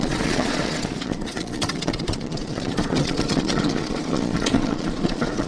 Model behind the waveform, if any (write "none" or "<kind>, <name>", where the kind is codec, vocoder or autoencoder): vocoder, Vocos